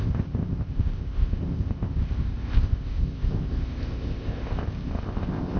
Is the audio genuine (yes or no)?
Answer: no